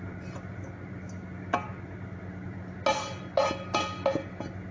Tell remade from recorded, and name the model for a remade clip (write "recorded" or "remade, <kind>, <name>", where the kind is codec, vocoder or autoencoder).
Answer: recorded